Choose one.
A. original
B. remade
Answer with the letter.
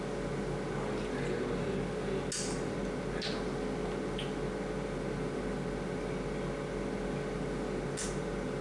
A